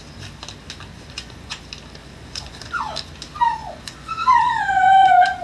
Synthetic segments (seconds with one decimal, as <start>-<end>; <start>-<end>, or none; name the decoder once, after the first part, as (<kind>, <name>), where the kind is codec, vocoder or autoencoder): 0.9-1.6 (vocoder, Vocos); 2.0-2.8; 3.6-5.4